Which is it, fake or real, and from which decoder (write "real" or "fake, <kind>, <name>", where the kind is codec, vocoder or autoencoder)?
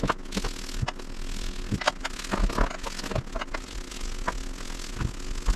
real